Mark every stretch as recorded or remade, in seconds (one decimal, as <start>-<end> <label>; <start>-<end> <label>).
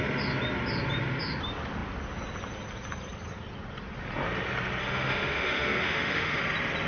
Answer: 0.0-4.8 recorded; 4.8-6.4 remade; 6.4-6.9 recorded